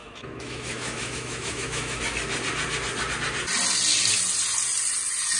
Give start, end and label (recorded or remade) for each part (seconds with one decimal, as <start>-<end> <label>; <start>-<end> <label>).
0.0-2.0 remade; 2.0-5.4 recorded